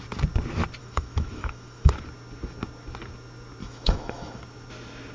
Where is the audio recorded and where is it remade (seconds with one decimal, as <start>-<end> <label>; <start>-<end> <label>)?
0.0-0.8 recorded; 0.8-1.9 remade; 1.9-3.6 recorded; 3.6-4.4 remade; 4.4-5.1 recorded